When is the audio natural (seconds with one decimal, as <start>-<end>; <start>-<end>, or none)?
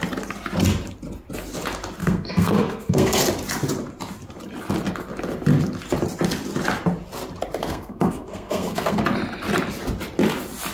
0.0-2.0; 3.2-7.6; 9.0-10.7